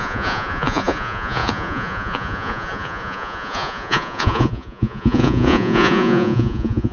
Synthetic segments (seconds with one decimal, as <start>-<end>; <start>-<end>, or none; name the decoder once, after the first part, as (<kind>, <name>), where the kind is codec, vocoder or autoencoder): 0.0-6.9 (vocoder, Vocos)